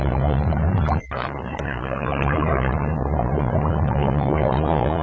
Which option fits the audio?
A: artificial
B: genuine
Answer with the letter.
A